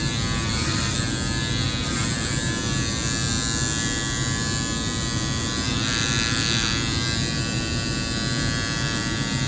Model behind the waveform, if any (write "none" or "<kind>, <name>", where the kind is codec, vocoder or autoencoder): none